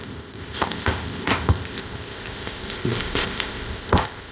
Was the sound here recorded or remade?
remade